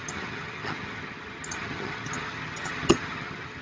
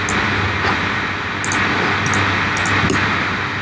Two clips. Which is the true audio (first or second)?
second